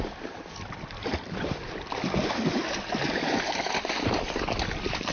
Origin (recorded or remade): recorded